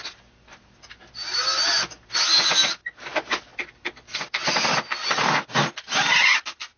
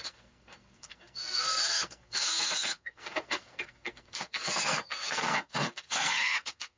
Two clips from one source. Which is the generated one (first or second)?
second